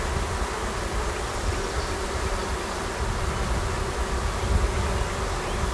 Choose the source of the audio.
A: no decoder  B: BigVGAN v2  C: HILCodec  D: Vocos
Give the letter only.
A